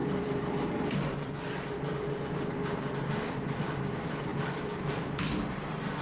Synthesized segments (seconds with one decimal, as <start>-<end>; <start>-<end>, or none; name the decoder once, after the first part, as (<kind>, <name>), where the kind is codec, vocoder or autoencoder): 0.0-6.0 (vocoder, BigVGAN v2)